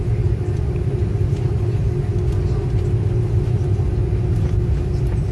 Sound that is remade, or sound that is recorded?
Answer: recorded